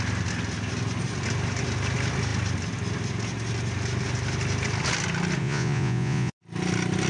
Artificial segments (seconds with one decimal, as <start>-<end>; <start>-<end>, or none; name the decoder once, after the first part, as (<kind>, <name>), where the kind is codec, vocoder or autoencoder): 5.4-6.3 (vocoder, Vocos)